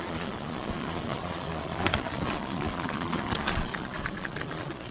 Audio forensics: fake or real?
fake